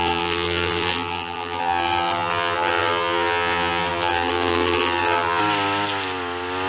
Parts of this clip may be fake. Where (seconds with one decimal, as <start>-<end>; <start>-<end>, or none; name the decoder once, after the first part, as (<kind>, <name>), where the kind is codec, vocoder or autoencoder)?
0.0-5.4 (vocoder, BigVGAN v2)